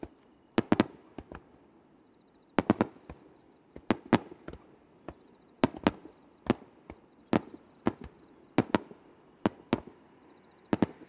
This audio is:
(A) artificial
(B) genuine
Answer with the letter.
B